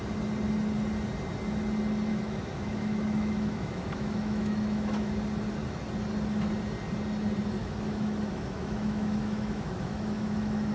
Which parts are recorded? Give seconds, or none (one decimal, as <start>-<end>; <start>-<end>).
0.0-2.1; 5.1-7.6